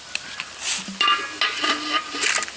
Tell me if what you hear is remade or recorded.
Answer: recorded